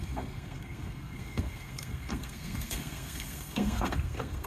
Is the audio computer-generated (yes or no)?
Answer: yes